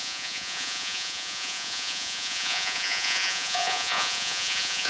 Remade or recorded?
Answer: remade